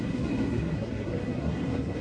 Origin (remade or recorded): remade